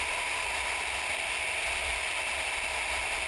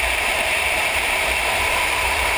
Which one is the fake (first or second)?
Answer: second